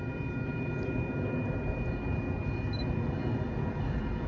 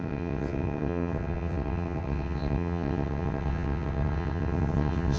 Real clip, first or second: first